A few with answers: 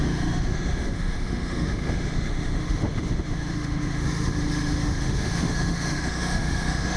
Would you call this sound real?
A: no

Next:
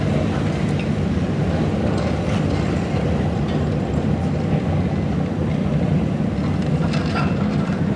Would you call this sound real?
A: yes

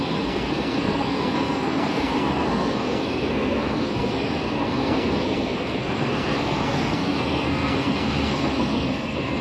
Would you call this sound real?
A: no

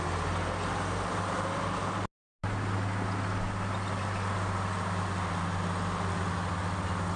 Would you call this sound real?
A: yes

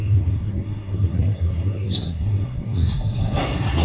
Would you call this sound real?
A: no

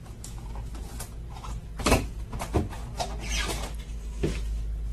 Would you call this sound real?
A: yes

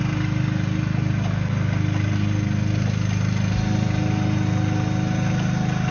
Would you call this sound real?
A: yes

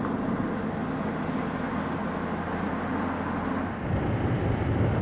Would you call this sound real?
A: yes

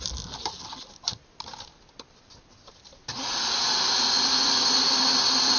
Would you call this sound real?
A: yes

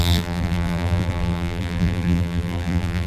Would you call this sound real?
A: no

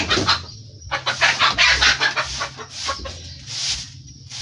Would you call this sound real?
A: yes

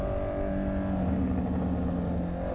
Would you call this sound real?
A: yes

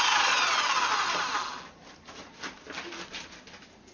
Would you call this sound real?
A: yes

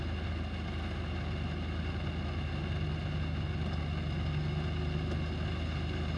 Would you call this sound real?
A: yes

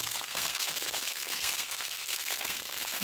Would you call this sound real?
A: no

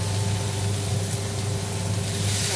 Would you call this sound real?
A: yes